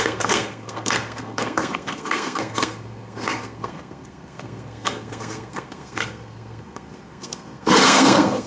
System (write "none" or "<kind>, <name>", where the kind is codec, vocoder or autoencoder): codec, SNAC